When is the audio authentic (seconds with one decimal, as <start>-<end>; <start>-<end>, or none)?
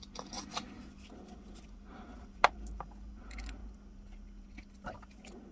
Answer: 0.0-5.5